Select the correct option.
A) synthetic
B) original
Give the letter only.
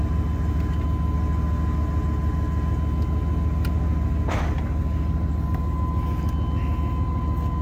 B